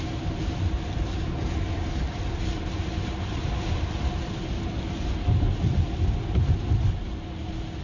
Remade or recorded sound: recorded